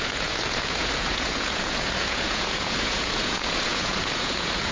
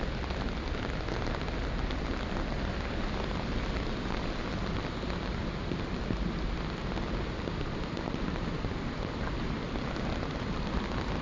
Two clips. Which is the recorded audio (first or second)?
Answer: second